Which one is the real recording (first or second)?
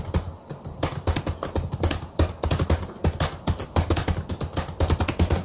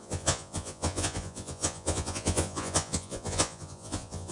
first